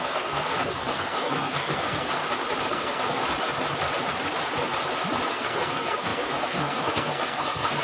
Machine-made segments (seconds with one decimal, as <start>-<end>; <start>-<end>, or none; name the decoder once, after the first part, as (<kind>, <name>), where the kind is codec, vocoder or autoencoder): 0.0-2.2 (codec, SNAC); 2.7-3.2; 5.3-7.8